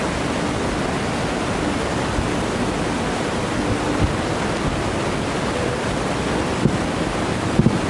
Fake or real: real